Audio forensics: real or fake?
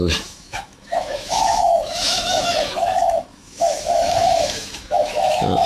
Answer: fake